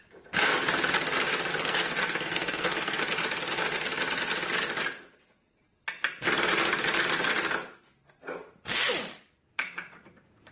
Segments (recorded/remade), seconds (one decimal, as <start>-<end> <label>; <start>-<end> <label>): 0.0-1.5 recorded; 1.5-3.0 remade; 3.0-10.5 recorded